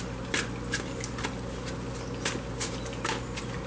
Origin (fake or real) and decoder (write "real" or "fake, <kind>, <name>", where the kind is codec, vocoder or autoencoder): real